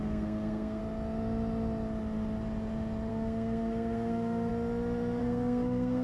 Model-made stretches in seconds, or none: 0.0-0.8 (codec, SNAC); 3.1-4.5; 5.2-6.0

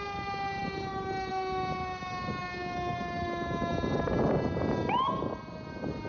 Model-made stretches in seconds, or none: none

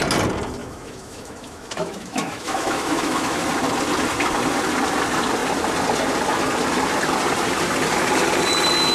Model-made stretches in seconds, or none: 0.6-3.4 (autoencoder, DAC-VAE)

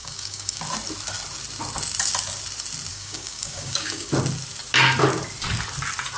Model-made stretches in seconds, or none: 0.0-0.6 (codec, DAC); 2.9-4.1

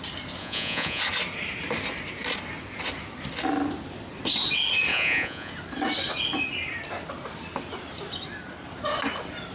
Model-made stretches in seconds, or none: 0.4-1.0 (vocoder, Vocos); 4.9-5.5

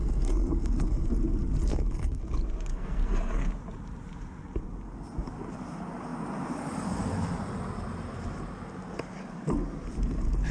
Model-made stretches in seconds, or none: 0.0-1.1 (codec, SNAC); 1.7-2.2; 2.7-3.5